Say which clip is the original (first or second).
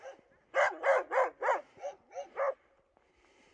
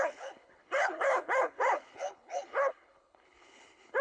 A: first